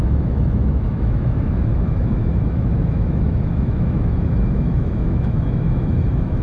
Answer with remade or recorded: remade